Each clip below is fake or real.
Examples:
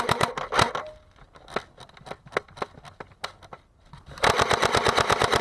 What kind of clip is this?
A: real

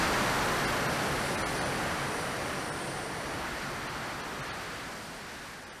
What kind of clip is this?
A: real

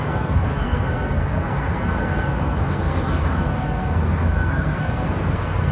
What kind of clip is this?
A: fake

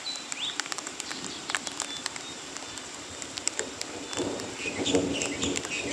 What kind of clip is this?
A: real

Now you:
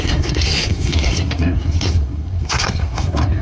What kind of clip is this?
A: fake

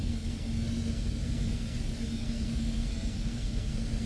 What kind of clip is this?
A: fake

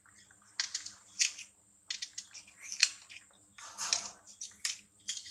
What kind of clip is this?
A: real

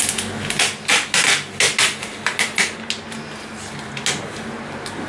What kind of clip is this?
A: real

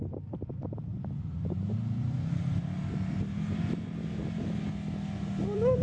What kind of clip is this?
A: real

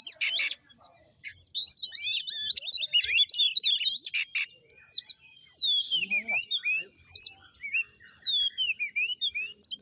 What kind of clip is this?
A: real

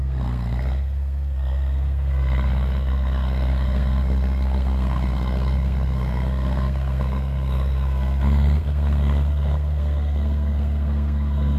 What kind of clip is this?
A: fake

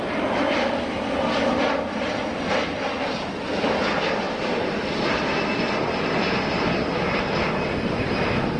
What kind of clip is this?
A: real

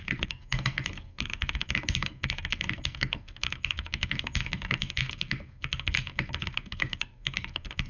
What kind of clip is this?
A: fake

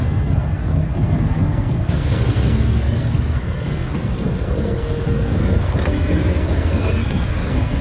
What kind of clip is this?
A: fake